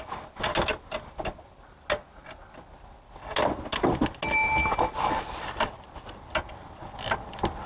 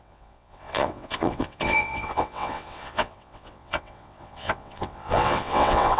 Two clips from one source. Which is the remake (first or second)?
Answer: second